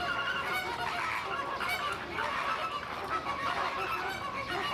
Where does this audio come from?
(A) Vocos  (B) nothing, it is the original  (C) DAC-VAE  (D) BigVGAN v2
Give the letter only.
B